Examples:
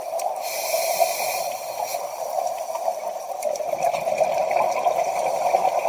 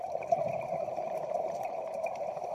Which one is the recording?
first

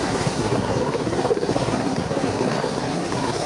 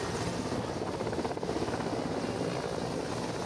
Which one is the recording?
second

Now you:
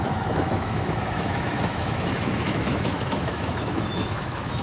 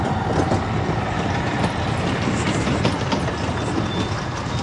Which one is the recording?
second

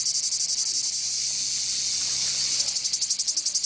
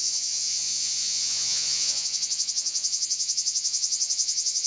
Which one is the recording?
first